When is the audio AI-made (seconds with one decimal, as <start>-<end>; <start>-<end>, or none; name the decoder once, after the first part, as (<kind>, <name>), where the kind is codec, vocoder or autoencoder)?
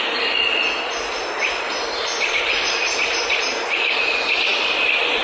none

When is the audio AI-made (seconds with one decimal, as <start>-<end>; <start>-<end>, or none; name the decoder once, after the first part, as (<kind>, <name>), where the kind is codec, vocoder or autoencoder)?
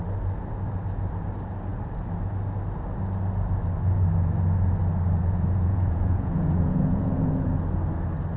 5.2-7.5 (vocoder, Vocos)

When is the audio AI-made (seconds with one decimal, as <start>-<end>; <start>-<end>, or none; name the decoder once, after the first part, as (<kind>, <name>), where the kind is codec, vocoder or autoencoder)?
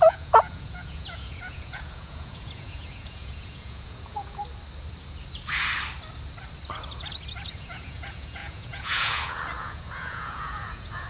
0.0-4.4 (vocoder, Vocos); 7.5-11.1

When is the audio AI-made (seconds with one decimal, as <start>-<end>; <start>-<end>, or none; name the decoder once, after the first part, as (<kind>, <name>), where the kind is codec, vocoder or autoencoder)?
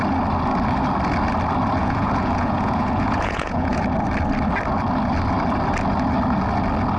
1.8-3.8 (vocoder, Vocos)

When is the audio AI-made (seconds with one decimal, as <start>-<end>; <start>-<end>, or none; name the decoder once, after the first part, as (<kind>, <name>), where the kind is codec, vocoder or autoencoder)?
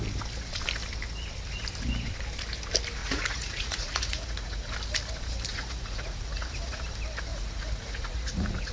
3.0-4.7 (vocoder, Vocos); 5.5-6.8; 7.3-8.7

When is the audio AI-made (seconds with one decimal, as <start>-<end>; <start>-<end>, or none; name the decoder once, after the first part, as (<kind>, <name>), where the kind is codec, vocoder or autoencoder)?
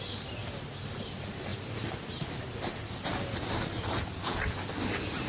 none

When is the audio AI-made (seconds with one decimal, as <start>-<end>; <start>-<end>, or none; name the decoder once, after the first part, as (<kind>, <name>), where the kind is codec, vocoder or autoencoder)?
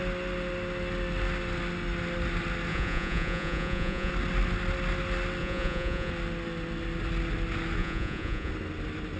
2.7-4.1 (vocoder, Vocos); 5.4-6.1; 7.8-8.5